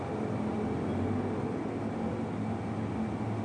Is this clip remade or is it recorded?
recorded